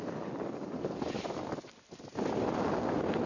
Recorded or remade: recorded